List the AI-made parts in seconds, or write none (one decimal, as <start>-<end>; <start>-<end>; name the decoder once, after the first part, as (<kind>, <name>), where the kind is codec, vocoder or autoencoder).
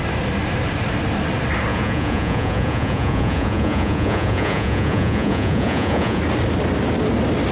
1.7-6.2 (vocoder, Vocos)